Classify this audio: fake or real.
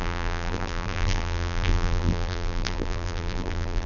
fake